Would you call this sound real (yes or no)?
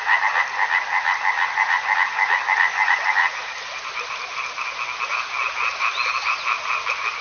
yes